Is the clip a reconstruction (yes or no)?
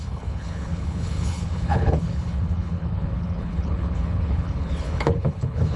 yes